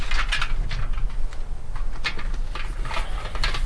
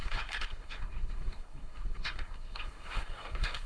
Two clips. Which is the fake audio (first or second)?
second